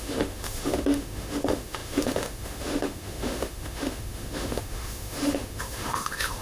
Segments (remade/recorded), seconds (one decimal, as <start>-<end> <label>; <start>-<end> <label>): 0.0-6.4 remade